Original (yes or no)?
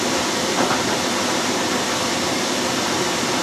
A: yes